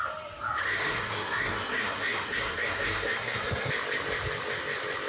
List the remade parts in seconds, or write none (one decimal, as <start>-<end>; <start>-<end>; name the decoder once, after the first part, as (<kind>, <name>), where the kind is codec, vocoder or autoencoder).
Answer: 0.6-3.7 (codec, SNAC)